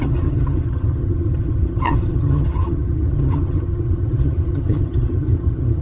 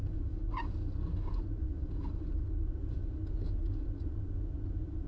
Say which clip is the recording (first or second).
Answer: second